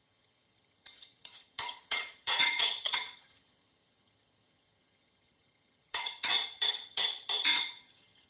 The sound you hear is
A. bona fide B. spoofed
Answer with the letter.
B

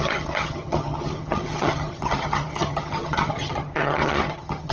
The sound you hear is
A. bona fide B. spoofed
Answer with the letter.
B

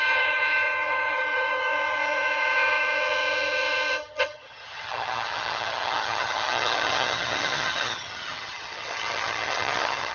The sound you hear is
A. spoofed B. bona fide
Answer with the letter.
A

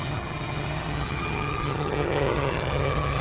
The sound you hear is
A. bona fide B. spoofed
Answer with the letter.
B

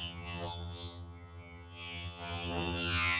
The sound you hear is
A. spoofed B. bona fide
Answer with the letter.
A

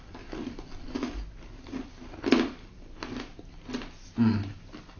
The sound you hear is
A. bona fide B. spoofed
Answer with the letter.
A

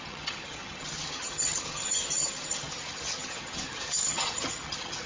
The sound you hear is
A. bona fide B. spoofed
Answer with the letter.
B